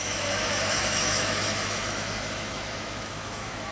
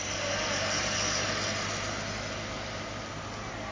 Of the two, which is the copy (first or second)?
first